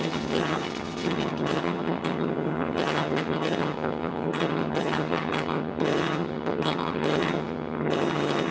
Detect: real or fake fake